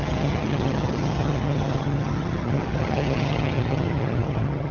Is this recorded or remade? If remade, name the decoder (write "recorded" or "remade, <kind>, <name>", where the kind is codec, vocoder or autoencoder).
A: remade, vocoder, HiFi-GAN